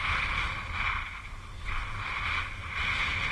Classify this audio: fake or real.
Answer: real